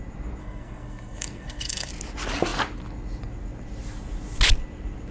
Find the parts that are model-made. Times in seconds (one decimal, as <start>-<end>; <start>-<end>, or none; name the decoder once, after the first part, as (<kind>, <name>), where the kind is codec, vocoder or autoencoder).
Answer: 0.4-1.9 (codec, SNAC)